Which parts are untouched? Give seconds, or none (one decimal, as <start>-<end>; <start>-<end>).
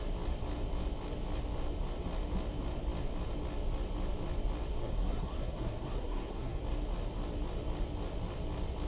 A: 0.0-4.8; 6.6-8.9